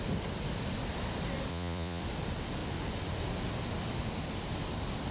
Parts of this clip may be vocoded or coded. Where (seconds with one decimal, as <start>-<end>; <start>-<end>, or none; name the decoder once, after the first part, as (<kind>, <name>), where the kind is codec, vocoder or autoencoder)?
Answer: 1.5-2.0 (vocoder, Vocos)